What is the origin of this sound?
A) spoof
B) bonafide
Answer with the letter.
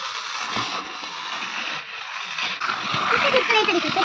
B